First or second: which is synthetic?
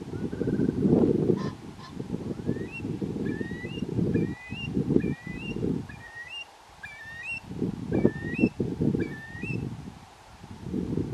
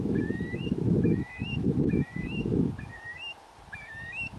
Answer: second